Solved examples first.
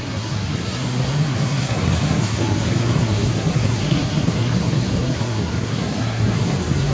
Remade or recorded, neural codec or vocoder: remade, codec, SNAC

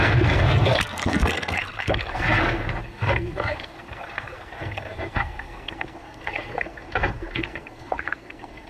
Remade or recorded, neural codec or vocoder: remade, codec, SNAC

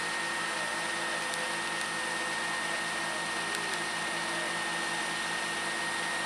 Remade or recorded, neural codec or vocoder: recorded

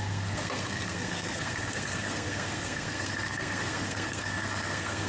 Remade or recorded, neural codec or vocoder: remade, codec, SNAC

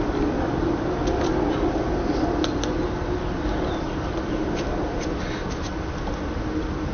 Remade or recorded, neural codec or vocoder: recorded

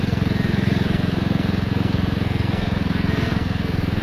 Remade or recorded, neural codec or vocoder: remade, codec, SNAC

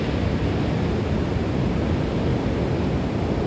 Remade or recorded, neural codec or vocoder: recorded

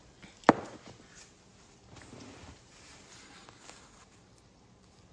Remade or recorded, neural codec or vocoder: recorded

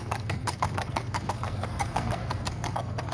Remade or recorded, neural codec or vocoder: remade, codec, SNAC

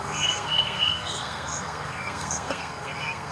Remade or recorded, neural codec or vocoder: remade, codec, SNAC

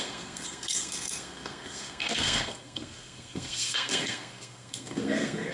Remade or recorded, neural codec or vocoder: remade, codec, SNAC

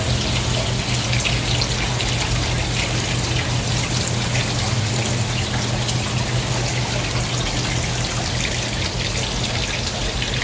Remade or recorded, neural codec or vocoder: recorded